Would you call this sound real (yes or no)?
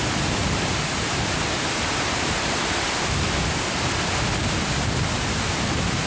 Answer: yes